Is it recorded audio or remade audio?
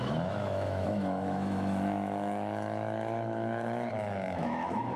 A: remade